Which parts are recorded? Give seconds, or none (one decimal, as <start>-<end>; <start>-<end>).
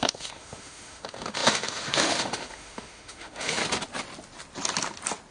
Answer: 3.6-5.3